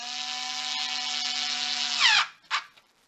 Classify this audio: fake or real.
real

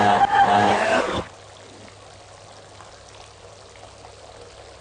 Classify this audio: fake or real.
real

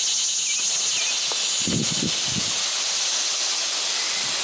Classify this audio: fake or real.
real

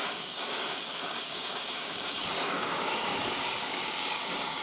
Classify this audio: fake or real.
fake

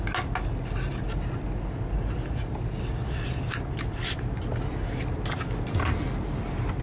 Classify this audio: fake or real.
real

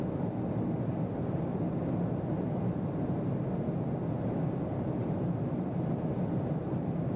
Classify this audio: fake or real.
real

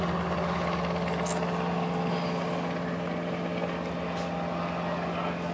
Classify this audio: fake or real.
real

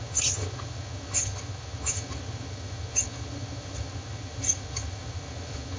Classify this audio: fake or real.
fake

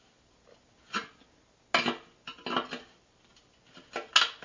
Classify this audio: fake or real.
real